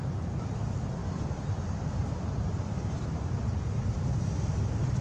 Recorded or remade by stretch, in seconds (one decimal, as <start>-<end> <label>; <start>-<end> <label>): 0.0-1.0 recorded; 1.0-4.0 remade; 4.0-5.0 recorded